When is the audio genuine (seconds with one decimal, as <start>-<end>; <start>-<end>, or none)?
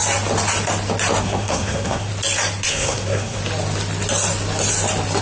0.0-1.2; 2.1-2.7; 3.4-5.2